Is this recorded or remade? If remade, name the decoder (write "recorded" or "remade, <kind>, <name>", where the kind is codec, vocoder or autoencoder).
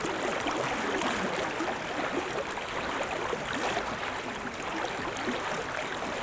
recorded